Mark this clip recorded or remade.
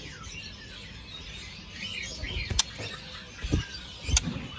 recorded